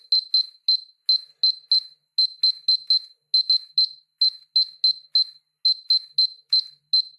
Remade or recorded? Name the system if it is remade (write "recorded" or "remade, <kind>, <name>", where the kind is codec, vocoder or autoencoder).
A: recorded